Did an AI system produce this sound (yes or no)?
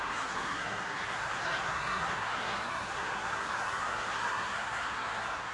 yes